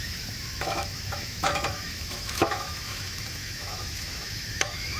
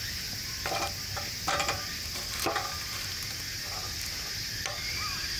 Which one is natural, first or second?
second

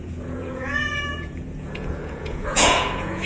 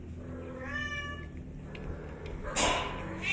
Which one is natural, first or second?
second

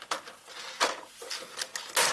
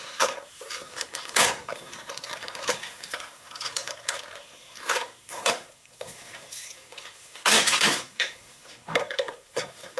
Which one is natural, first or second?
first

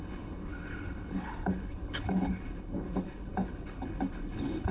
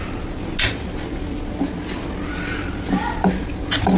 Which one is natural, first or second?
second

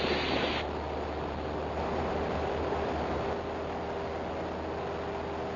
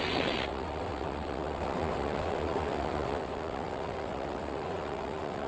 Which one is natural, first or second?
first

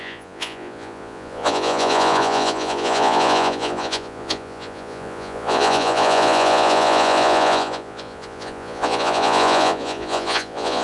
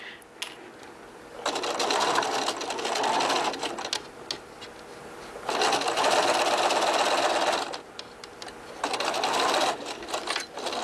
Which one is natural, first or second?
second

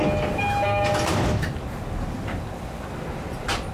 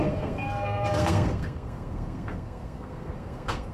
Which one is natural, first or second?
first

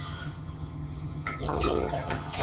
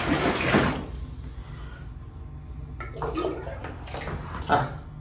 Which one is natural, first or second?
second